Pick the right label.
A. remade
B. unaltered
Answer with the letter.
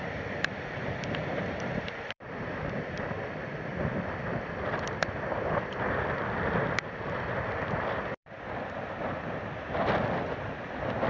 A